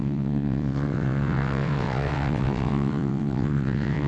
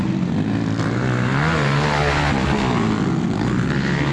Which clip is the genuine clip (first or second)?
second